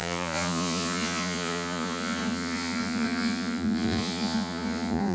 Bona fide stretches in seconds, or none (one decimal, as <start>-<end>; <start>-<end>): none